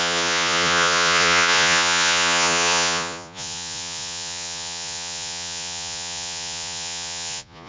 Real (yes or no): no